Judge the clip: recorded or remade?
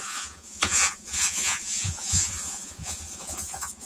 remade